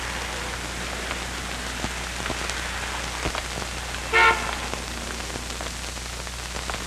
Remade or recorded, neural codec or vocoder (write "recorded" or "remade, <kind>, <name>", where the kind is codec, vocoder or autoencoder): recorded